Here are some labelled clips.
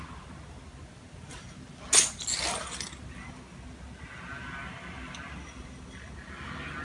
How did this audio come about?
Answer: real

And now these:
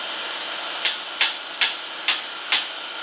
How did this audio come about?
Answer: fake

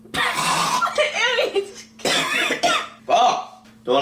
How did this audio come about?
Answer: real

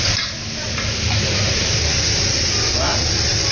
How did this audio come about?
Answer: fake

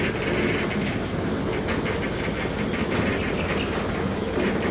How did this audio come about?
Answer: real